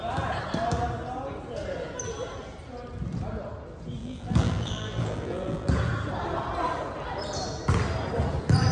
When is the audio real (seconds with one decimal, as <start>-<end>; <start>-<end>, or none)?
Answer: 0.0-4.0; 5.7-8.7